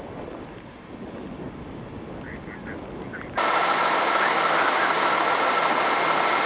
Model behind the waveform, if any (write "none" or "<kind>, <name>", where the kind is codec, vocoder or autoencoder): none